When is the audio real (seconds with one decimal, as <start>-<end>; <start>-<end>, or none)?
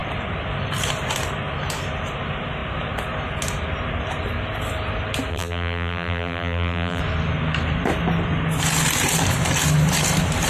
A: 0.0-5.3; 7.0-10.5